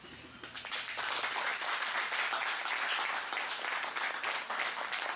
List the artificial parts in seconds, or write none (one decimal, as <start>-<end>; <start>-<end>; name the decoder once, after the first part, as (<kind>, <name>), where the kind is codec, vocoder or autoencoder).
none